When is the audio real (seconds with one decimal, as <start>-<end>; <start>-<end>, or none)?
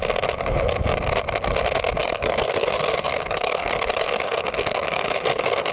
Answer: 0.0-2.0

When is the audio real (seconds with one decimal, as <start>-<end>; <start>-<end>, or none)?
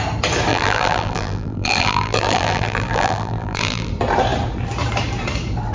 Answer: 0.0-0.5; 3.9-5.7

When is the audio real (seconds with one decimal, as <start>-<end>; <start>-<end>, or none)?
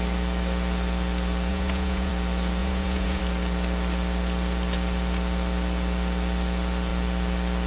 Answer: 0.0-1.5; 2.1-2.6; 3.2-7.7